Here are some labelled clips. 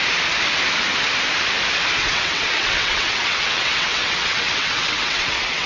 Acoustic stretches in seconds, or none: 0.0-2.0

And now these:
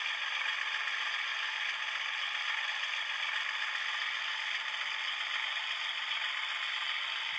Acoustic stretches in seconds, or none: 1.3-2.6; 4.3-5.4